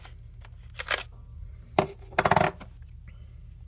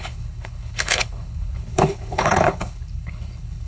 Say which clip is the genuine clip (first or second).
first